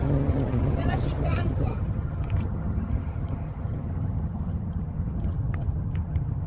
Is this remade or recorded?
remade